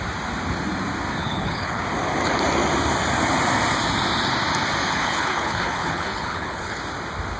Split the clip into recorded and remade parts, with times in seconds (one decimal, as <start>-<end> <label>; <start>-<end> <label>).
0.0-1.2 recorded; 1.2-1.8 remade; 1.8-4.8 recorded; 4.8-6.8 remade; 6.8-7.4 recorded